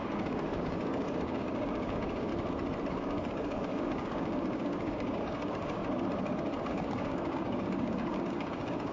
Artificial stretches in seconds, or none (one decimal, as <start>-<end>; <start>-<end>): 0.0-2.3; 2.9-5.8; 6.7-8.9